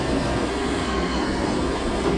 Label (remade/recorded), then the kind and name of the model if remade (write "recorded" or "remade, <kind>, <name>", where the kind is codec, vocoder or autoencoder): remade, codec, SNAC